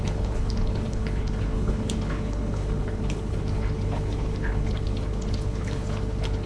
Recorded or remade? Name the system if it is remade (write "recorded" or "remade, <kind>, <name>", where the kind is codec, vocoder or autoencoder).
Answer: remade, codec, HILCodec